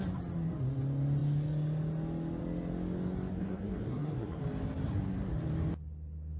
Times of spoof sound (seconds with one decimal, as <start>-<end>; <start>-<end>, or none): 3.3-4.4